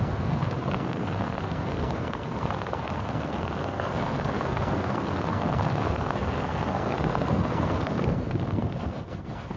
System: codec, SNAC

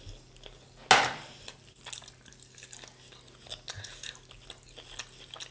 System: none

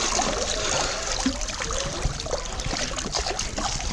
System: none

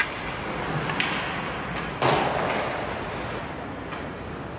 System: none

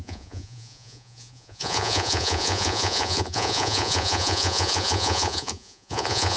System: vocoder, Vocos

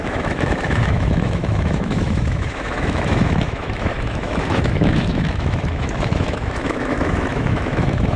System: autoencoder, DAC-VAE